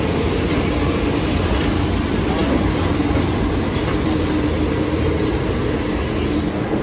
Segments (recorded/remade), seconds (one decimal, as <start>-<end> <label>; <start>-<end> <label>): 0.0-6.8 recorded